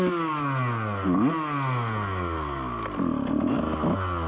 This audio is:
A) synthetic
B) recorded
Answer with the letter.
B